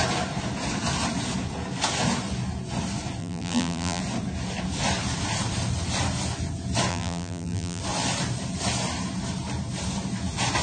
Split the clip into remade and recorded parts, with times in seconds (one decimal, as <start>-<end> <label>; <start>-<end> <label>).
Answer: 0.0-3.2 recorded; 3.2-4.0 remade; 4.0-6.9 recorded; 6.9-7.8 remade; 7.8-10.6 recorded